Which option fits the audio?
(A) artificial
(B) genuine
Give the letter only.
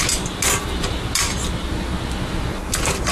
B